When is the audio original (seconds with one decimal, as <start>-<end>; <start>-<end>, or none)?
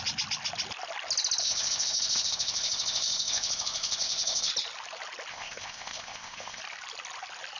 0.0-1.4; 4.5-5.3; 6.6-7.6